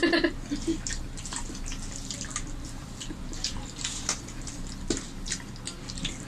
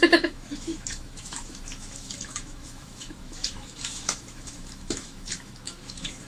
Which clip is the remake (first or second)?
second